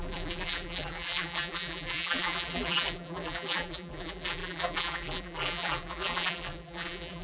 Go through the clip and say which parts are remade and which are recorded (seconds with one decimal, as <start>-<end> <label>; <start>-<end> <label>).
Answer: 0.0-7.2 remade

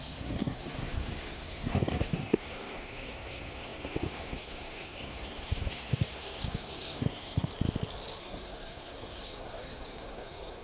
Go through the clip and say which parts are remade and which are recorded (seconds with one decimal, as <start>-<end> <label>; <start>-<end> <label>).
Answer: 0.0-7.5 remade; 7.5-8.2 recorded; 8.2-10.6 remade

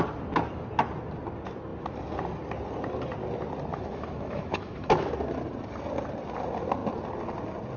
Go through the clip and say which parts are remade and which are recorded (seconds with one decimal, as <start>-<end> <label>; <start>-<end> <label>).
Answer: 0.0-3.7 recorded; 3.7-5.1 remade; 5.1-7.8 recorded

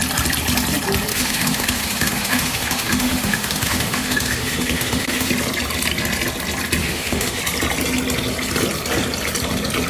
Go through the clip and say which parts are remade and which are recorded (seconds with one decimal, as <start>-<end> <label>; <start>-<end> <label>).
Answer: 0.0-1.1 recorded; 1.1-5.3 remade; 5.3-6.8 recorded; 6.8-7.4 remade; 7.4-9.9 recorded